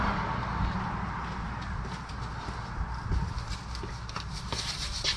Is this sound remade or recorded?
recorded